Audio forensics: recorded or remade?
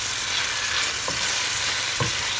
recorded